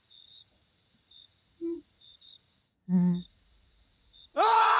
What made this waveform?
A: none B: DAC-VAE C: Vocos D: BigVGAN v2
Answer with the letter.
C